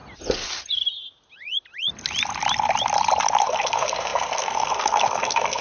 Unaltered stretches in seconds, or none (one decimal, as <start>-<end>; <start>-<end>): 0.0-3.4